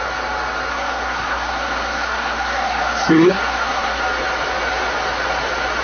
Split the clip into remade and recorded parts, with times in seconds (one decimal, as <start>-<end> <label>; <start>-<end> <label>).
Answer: 0.0-0.7 recorded; 0.7-4.0 remade; 4.0-5.8 recorded